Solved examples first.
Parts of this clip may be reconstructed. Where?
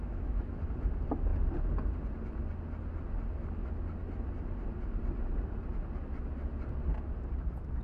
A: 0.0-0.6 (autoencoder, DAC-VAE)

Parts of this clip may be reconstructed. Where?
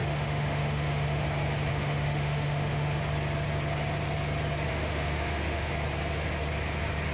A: 0.0-1.2 (autoencoder, DAC-VAE); 1.7-3.0; 4.7-5.7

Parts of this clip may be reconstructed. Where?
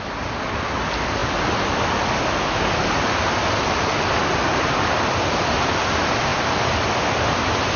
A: none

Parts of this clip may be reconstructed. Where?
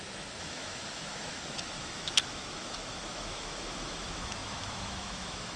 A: 0.0-5.6 (autoencoder, DAC-VAE)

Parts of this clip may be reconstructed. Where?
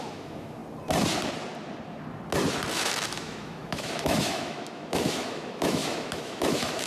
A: 0.0-0.6 (autoencoder, DAC-VAE); 2.7-6.9